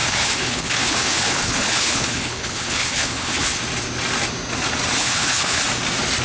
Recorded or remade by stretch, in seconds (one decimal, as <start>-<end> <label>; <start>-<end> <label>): 0.0-3.6 remade; 3.6-5.0 recorded; 5.0-5.6 remade; 5.6-6.2 recorded